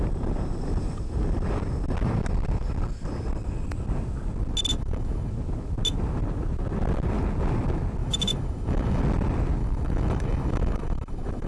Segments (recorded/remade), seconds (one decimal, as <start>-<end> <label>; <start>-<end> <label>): 0.0-4.7 recorded; 4.7-5.3 remade; 5.3-8.0 recorded; 8.0-9.0 remade; 9.0-9.6 recorded; 9.6-11.5 remade